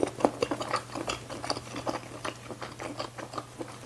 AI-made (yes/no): no